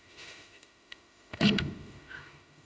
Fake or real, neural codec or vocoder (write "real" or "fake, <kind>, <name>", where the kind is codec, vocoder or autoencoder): fake, autoencoder, DAC-VAE